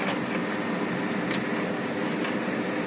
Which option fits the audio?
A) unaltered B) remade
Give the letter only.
A